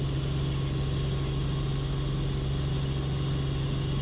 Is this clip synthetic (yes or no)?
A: no